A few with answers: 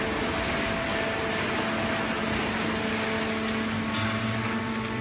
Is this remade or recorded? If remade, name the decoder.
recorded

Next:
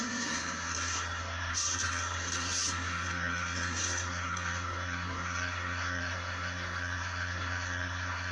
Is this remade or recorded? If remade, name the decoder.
remade, codec, SNAC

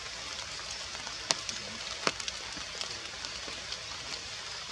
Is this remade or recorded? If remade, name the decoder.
recorded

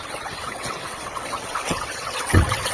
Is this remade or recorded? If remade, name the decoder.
remade, vocoder, WaveNeXt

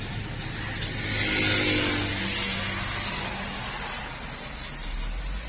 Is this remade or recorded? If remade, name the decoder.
recorded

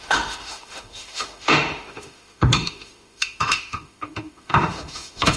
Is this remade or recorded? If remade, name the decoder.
remade, autoencoder, DAC-VAE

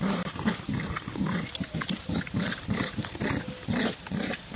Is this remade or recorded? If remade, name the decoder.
recorded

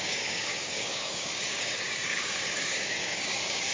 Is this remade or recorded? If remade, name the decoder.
remade, codec, DAC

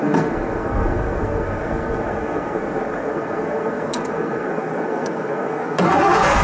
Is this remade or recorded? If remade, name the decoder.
remade, codec, SNAC